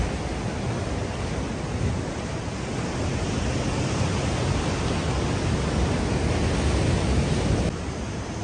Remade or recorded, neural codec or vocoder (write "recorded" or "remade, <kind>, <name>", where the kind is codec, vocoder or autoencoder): recorded